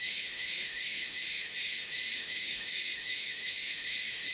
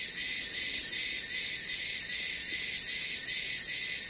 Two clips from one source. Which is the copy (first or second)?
first